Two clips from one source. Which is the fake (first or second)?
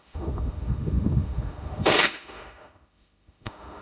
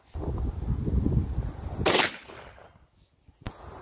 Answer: first